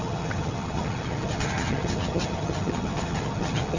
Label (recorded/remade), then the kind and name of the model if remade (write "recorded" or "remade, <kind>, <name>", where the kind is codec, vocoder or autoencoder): remade, vocoder, HiFi-GAN